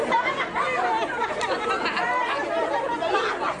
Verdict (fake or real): real